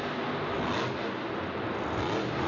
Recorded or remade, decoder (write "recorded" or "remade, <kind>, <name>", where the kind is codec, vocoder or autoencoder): recorded